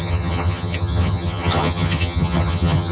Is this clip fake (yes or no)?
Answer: yes